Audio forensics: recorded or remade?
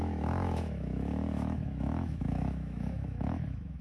remade